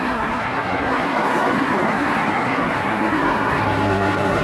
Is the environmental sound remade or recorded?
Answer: remade